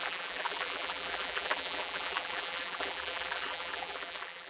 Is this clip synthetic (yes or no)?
yes